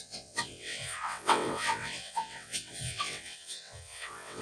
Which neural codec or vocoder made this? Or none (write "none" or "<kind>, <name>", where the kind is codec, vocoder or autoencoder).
vocoder, WaveNeXt